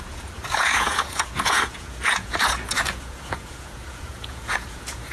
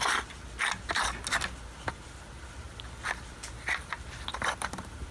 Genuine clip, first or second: second